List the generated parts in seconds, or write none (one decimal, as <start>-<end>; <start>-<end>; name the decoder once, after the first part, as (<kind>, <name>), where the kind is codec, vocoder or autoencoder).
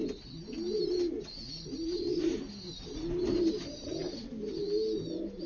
none